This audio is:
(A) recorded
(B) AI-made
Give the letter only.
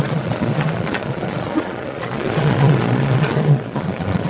B